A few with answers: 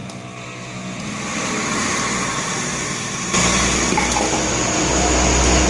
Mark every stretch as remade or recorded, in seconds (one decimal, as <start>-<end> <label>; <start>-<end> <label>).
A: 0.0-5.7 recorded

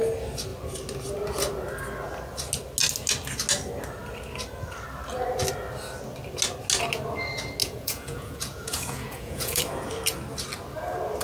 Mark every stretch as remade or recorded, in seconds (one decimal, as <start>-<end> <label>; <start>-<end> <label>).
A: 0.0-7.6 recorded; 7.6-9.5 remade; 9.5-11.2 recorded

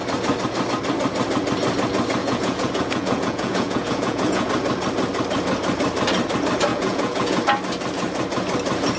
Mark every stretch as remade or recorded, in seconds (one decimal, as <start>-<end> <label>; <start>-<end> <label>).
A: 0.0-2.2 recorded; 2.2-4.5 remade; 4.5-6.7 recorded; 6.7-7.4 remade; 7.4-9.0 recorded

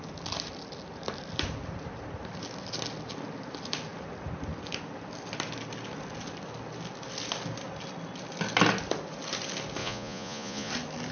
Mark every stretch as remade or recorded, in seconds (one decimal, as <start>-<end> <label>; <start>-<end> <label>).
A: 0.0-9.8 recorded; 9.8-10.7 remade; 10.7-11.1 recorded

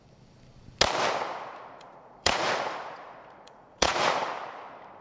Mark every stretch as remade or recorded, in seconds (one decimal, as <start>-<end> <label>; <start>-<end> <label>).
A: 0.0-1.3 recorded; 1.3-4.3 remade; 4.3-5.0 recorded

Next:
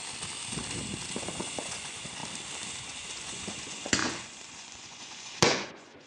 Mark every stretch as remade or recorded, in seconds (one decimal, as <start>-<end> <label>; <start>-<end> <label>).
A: 0.0-1.2 recorded; 1.2-2.2 remade; 2.2-2.8 recorded; 2.8-6.1 remade

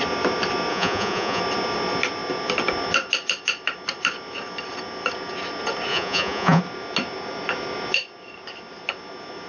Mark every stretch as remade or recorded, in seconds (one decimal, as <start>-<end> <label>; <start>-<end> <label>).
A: 0.0-0.7 recorded; 0.7-1.4 remade; 1.4-5.9 recorded; 5.9-6.6 remade; 6.6-9.5 recorded

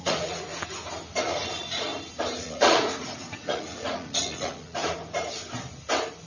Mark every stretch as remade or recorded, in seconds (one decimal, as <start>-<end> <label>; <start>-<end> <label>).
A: 0.0-0.5 remade; 0.5-1.2 recorded; 1.2-1.9 remade; 1.9-2.4 recorded; 2.4-4.8 remade; 4.8-6.3 recorded